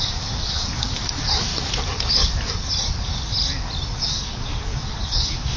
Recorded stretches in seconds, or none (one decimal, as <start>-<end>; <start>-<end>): 1.5-4.0